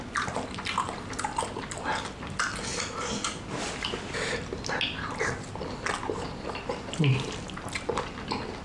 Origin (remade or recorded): recorded